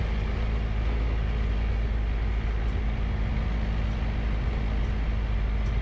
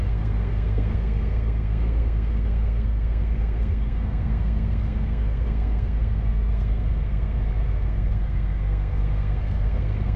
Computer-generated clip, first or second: second